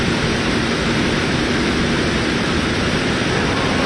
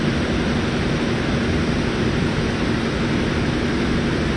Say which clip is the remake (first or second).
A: first